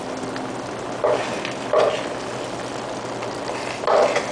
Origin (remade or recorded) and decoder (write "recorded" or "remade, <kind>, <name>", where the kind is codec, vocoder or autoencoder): recorded